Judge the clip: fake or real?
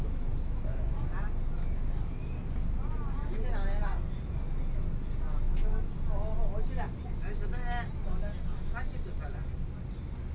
real